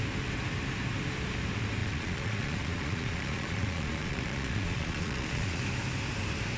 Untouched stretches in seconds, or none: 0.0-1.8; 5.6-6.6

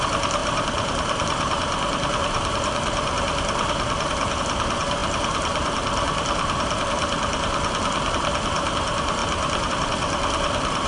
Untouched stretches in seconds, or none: none

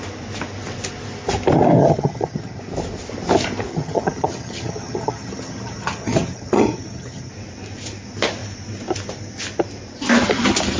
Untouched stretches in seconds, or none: 0.0-1.8; 2.6-3.7; 7.3-10.8

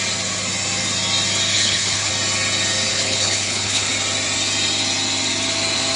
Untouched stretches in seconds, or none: 0.0-1.5; 2.1-2.9; 3.9-6.0

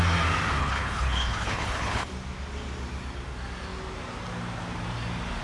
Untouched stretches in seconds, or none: 0.0-0.6; 2.1-5.4